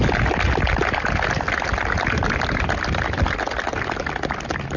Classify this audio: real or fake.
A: real